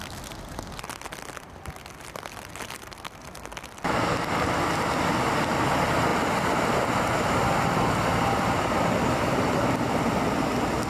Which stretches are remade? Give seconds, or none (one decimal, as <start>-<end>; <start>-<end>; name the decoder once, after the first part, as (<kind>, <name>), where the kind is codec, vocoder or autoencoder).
none